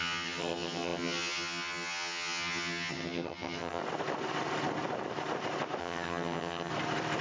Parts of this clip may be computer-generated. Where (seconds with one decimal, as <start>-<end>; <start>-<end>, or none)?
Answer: 0.0-3.8; 5.8-6.7